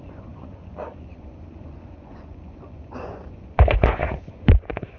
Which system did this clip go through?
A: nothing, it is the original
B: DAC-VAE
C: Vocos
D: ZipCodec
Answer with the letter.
C